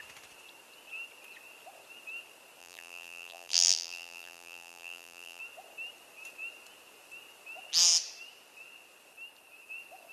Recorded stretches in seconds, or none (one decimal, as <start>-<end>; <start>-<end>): 0.0-2.6; 5.4-10.1